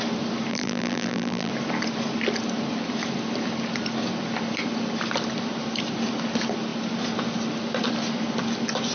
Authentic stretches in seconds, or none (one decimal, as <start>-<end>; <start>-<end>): 0.0-0.5; 1.5-8.9